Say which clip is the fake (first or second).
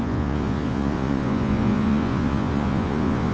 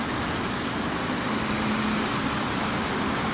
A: first